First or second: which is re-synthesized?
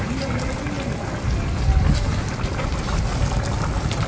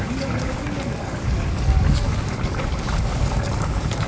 second